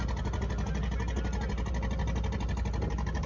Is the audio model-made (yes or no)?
no